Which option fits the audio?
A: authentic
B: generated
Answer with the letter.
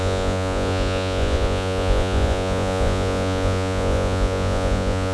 B